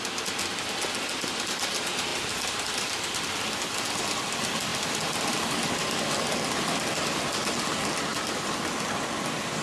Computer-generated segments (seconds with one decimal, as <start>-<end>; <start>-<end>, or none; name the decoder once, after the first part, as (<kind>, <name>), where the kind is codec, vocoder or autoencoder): none